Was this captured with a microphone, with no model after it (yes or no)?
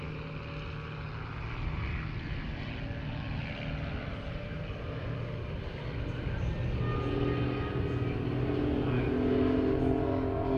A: yes